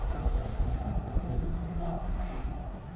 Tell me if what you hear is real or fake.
fake